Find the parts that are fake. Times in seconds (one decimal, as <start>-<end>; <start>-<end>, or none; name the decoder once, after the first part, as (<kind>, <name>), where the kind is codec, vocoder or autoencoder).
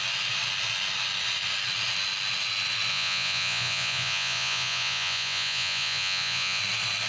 2.9-6.6 (vocoder, Vocos)